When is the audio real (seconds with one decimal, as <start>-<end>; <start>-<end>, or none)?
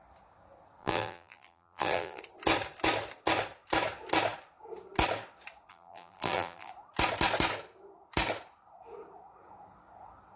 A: 0.0-0.8; 2.2-5.7; 6.7-10.4